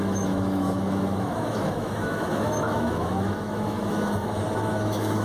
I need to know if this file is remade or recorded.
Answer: remade